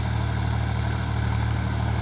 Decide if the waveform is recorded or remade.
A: recorded